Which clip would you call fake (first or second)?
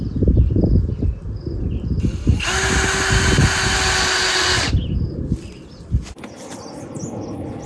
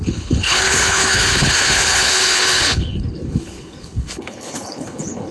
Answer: second